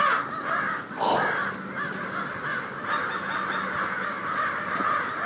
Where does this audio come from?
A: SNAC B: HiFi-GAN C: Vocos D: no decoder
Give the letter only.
D